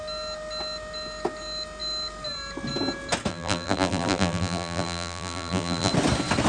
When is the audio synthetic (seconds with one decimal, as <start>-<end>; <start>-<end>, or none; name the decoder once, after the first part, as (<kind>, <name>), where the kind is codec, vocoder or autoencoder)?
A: 3.3-5.9 (vocoder, BigVGAN v2)